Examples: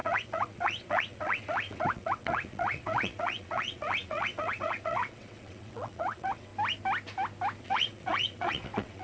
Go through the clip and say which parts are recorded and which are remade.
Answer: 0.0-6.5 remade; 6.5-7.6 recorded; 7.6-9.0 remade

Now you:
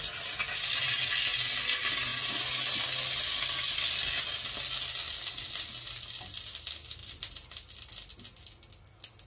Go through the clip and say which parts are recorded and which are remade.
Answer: 0.0-9.3 recorded

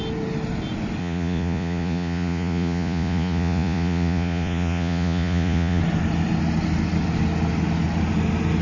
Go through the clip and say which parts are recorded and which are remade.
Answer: 0.0-1.0 recorded; 1.0-5.8 remade; 5.8-8.6 recorded

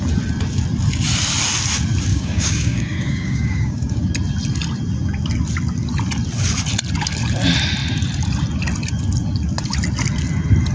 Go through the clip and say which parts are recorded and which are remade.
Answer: 0.0-2.1 recorded; 2.1-4.1 remade; 4.1-10.7 recorded